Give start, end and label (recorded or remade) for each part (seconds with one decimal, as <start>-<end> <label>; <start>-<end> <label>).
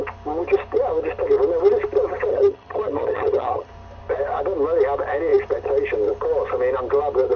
0.0-2.3 recorded; 2.3-3.7 remade; 3.7-7.4 recorded